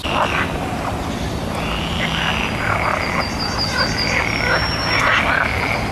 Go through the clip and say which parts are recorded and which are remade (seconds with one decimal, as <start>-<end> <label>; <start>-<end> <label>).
0.0-3.1 remade; 3.1-5.9 recorded